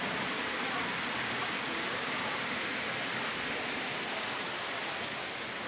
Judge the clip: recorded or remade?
recorded